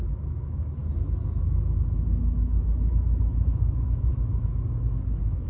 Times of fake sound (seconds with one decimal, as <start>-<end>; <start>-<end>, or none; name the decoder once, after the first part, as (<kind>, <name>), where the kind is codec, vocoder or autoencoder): 0.0-5.5 (autoencoder, DAC-VAE)